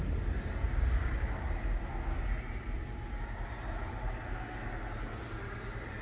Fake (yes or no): no